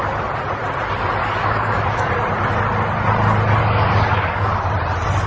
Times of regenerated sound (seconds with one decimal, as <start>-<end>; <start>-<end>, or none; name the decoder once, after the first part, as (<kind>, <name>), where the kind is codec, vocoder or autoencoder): 1.2-2.1 (codec, DAC); 3.6-4.7